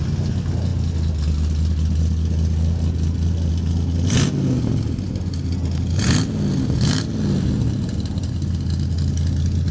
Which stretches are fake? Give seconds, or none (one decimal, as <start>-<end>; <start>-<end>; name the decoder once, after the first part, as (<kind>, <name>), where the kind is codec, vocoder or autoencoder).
none